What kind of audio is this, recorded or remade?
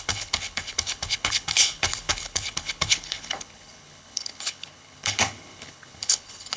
remade